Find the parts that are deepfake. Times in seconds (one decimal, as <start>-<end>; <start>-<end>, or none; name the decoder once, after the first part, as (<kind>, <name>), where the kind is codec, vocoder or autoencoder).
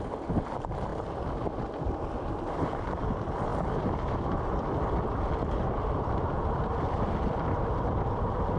0.0-0.9 (vocoder, BigVGAN v2); 1.8-3.5; 4.1-8.6